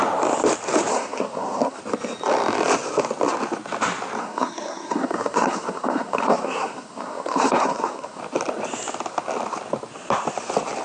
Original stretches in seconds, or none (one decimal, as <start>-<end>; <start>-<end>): 0.0-0.9; 1.8-4.2; 8.2-10.8